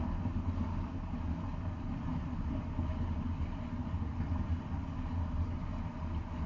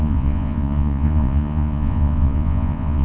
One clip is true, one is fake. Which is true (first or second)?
first